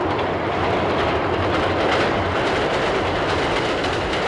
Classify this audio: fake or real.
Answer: real